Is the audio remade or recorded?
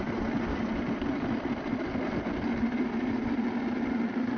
recorded